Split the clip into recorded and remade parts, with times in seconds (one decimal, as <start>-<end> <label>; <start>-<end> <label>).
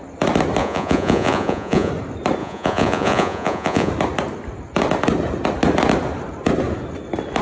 0.0-0.6 recorded; 0.6-1.9 remade; 1.9-2.4 recorded; 2.4-3.9 remade; 3.9-7.4 recorded